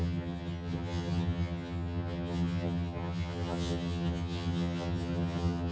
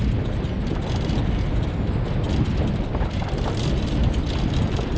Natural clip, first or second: second